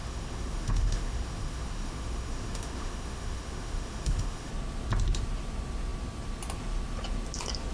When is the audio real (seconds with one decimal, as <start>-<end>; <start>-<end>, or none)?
4.5-7.7